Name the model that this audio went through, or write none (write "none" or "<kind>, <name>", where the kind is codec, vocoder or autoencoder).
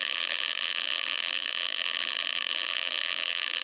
vocoder, BigVGAN v2